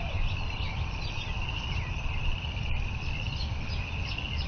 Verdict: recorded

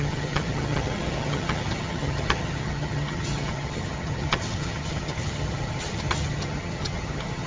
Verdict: remade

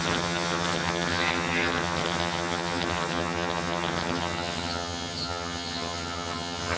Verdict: remade